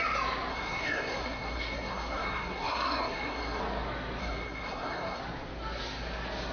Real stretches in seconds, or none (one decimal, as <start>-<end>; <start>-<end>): 0.0-0.5; 3.6-4.2; 5.2-6.5